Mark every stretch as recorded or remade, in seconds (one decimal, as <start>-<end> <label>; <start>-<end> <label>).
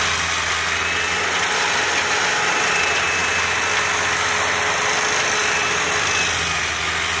0.0-7.2 recorded